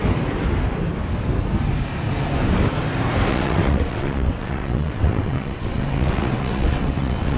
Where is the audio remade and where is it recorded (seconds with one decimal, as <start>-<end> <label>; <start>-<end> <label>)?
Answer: 0.0-3.3 recorded; 3.3-7.4 remade